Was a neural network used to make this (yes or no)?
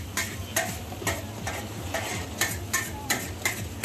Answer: no